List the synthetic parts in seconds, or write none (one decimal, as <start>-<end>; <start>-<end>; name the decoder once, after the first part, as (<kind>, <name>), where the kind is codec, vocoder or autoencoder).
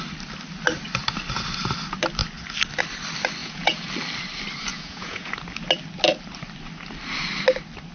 3.4-3.9 (vocoder, Vocos); 4.7-5.3